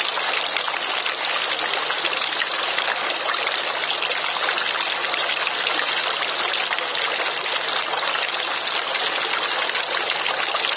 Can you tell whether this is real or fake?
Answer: real